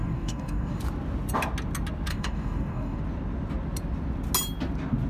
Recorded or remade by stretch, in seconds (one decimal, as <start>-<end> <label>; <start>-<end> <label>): 0.0-0.8 remade; 0.8-2.1 recorded; 2.1-3.0 remade; 3.0-5.1 recorded